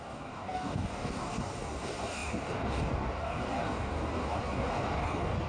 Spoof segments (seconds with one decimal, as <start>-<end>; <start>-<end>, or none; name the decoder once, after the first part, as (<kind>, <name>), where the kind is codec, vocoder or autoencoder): 0.0-5.5 (codec, DAC)